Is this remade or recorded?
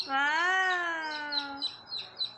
recorded